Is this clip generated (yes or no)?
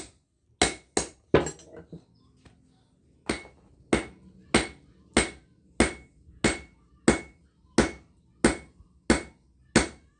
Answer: no